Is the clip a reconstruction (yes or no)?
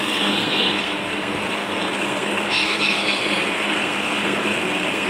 yes